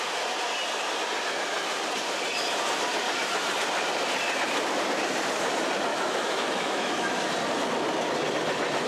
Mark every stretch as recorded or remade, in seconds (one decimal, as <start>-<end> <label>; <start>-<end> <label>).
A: 0.0-5.9 recorded; 5.9-7.2 remade; 7.2-8.9 recorded